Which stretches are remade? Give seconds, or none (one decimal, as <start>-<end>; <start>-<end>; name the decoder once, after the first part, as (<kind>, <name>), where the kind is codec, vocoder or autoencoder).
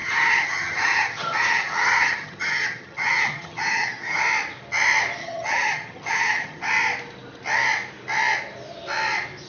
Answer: 0.0-4.2 (vocoder, HiFi-GAN); 5.2-6.6